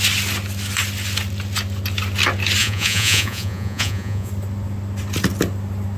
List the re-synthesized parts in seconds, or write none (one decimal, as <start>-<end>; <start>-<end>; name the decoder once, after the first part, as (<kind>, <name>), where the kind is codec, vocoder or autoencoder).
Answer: 2.6-4.3 (vocoder, Vocos)